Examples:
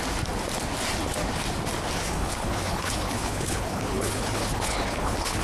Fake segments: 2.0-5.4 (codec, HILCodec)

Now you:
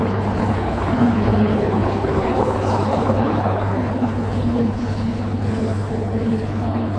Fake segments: 0.0-7.0 (codec, HILCodec)

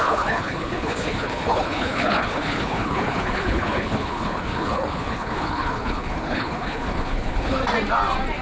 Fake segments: 0.0-7.6 (codec, HILCodec)

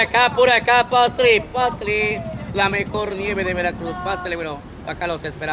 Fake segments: none

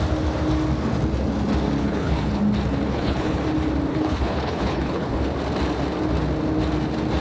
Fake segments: 1.8-2.4 (codec, HILCodec); 2.9-3.4; 3.9-5.2

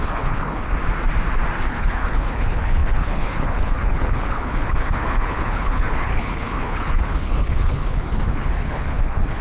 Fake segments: 0.0-0.7 (codec, HILCodec); 1.6-9.4

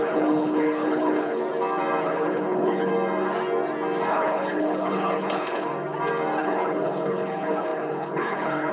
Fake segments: 0.0-1.4 (codec, HILCodec); 2.0-2.9; 4.1-5.7; 6.4-8.7

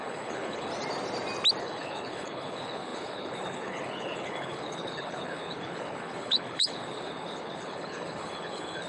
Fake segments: 0.0-0.7 (codec, HILCodec); 1.6-8.9